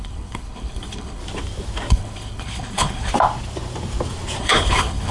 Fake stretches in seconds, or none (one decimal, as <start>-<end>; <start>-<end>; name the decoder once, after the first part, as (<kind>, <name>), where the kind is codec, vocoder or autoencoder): 0.0-1.2 (codec, HILCodec); 1.9-3.1; 4.4-5.1